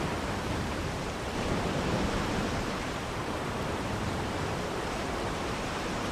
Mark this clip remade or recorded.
remade